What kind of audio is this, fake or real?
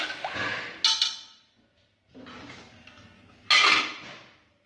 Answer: real